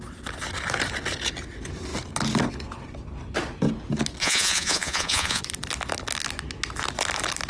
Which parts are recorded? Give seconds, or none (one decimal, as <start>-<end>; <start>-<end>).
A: 0.0-4.2; 5.4-7.5